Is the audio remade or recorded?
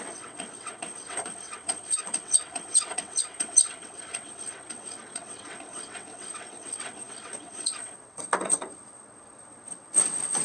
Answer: remade